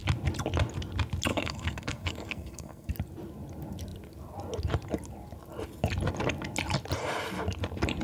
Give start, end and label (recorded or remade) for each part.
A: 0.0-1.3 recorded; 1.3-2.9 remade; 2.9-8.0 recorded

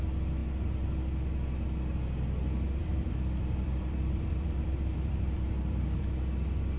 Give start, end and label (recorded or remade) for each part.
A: 0.0-2.8 recorded; 2.8-6.0 remade; 6.0-6.8 recorded

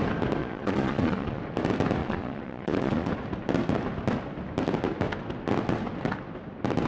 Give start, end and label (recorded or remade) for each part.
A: 0.0-0.4 recorded; 0.4-1.4 remade; 1.4-2.0 recorded; 2.0-3.1 remade; 3.1-6.9 recorded

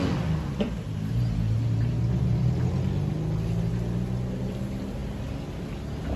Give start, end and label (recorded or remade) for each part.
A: 0.0-6.2 recorded

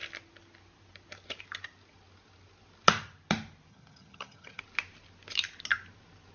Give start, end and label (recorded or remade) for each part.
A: 0.0-3.7 recorded; 3.7-4.6 remade; 4.6-6.3 recorded

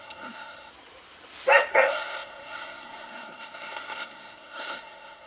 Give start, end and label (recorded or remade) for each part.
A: 0.0-0.7 remade; 0.7-1.7 recorded; 1.7-5.3 remade